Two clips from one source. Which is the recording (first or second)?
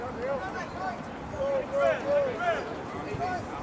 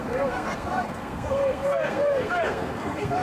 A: first